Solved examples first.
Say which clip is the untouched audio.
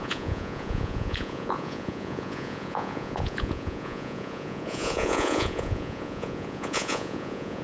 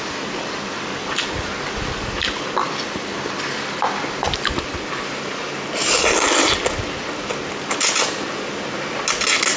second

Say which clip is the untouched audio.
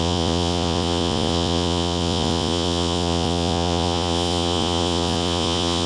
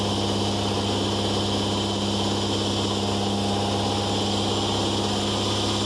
second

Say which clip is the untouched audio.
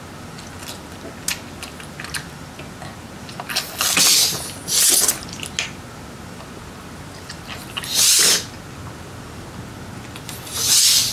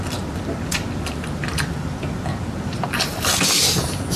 first